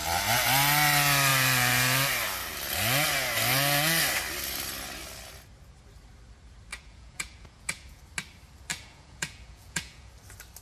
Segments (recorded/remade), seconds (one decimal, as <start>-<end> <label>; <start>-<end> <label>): 0.0-6.7 recorded; 6.7-8.0 remade; 8.0-8.7 recorded; 8.7-10.1 remade; 10.1-10.6 recorded